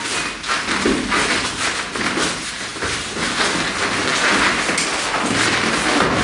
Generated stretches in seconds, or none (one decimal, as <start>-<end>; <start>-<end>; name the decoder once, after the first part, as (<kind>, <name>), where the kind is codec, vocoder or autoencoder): none